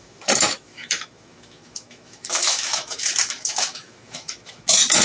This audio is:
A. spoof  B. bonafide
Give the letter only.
A